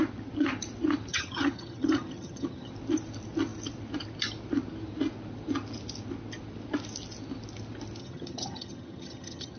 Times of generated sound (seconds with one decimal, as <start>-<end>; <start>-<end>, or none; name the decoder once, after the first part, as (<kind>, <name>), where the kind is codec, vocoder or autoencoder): 1.1-2.7 (vocoder, HiFi-GAN); 8.0-9.6

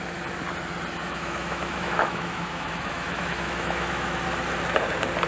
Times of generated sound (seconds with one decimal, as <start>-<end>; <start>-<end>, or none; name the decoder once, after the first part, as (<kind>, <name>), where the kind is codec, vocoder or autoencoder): 1.0-4.2 (autoencoder, DAC-VAE)

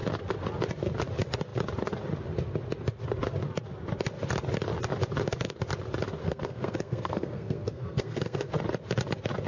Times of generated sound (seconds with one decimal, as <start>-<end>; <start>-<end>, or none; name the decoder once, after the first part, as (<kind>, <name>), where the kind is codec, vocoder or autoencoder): 6.2-8.5 (codec, SNAC)

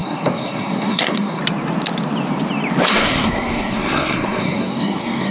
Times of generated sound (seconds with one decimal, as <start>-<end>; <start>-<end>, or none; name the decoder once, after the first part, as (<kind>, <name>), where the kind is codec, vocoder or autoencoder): 0.0-1.4 (codec, SNAC); 2.9-5.3

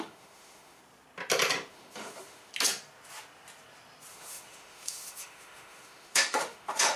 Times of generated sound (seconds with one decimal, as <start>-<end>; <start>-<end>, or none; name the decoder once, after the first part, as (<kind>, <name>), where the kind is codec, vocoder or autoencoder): 0.0-0.8 (autoencoder, DAC-VAE); 1.7-2.5; 4.1-7.0

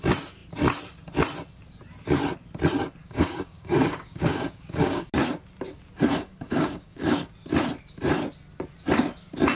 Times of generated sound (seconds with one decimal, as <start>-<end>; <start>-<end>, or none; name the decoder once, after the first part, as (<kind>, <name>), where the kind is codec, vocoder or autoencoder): 3.0-5.1 (codec, DAC); 6.1-7.3